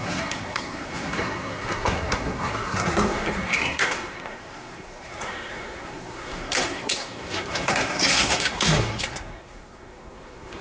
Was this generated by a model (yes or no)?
yes